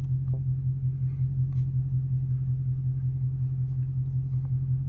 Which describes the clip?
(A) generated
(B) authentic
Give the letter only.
B